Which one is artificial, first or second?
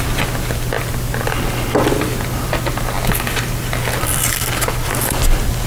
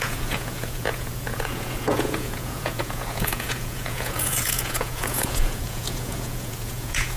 second